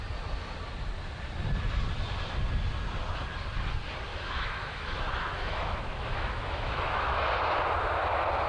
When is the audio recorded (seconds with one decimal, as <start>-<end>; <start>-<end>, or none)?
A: 0.0-4.1; 7.3-8.5